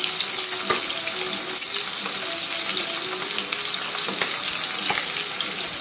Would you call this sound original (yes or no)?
yes